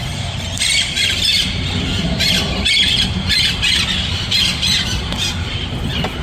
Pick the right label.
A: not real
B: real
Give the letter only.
B